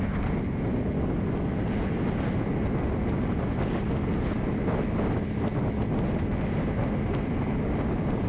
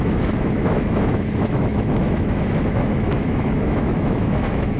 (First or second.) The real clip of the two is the first